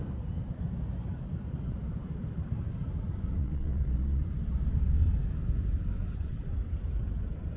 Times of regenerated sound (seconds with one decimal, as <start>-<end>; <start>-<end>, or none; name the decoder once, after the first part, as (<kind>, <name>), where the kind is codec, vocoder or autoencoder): 3.4-4.2 (vocoder, Vocos)

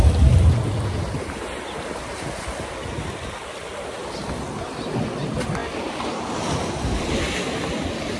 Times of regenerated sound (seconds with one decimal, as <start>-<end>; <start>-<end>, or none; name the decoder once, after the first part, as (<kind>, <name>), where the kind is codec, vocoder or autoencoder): none

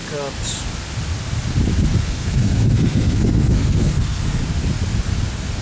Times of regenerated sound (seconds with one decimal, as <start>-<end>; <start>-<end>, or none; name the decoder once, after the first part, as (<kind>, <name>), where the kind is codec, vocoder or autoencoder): 2.0-4.4 (codec, SNAC)

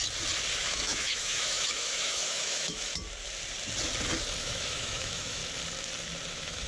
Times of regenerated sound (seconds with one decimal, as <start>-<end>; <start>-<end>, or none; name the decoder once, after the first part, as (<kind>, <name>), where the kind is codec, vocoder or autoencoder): 0.6-2.9 (autoencoder, DAC-VAE); 4.4-5.4; 6.3-6.7

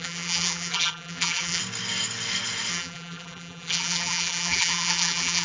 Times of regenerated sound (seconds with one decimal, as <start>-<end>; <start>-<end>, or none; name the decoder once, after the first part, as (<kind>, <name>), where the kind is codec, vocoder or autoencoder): 0.0-1.6 (vocoder, BigVGAN v2); 2.7-5.4